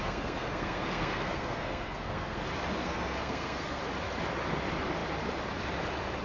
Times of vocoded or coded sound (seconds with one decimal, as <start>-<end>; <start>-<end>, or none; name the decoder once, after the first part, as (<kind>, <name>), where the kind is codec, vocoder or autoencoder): 0.0-2.4 (codec, SNAC); 2.8-3.8